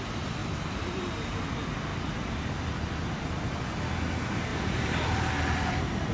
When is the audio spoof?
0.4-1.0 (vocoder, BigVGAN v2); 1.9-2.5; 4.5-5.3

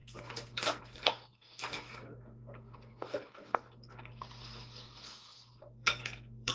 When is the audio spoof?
0.0-6.5 (codec, SNAC)